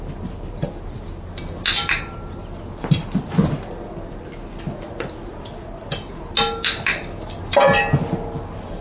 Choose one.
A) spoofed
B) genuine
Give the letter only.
B